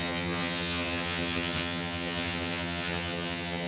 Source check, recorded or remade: remade